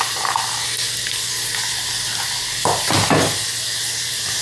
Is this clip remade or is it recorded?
recorded